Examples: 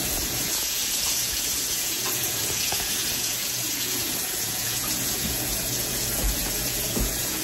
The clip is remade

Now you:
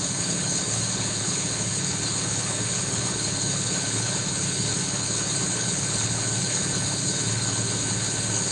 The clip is remade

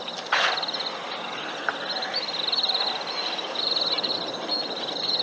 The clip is recorded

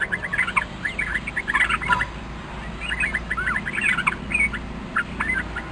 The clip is recorded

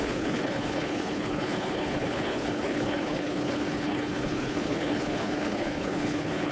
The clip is remade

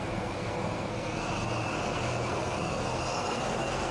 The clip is remade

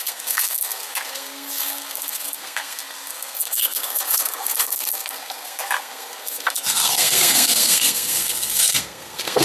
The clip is remade